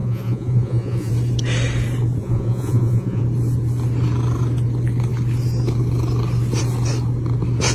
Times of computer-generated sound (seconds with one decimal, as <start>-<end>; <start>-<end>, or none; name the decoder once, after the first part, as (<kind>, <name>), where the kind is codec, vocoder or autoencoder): 0.0-1.1 (vocoder, Vocos); 2.2-3.2